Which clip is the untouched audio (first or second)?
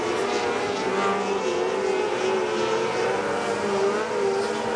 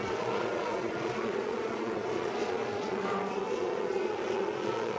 first